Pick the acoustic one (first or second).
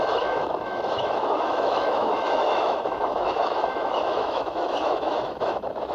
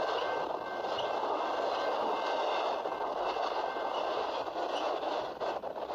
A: second